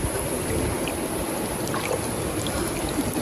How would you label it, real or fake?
real